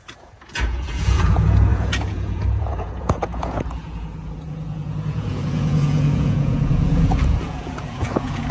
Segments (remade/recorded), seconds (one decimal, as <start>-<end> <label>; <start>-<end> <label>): 0.0-8.5 remade